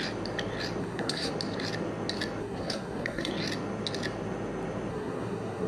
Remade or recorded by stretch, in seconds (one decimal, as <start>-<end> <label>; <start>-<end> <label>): 0.0-0.8 recorded; 0.8-1.3 remade; 1.3-2.4 recorded; 2.4-3.3 remade; 3.3-4.9 recorded; 4.9-5.7 remade